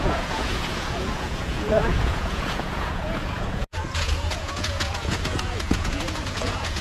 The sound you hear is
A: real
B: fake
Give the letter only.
B